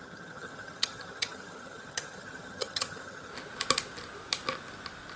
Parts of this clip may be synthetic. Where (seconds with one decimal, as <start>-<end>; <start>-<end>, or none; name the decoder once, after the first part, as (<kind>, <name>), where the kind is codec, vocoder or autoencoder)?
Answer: 0.0-3.3 (vocoder, HiFi-GAN)